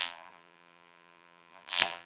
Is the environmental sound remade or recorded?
remade